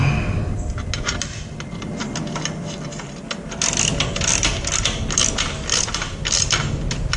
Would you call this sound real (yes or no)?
yes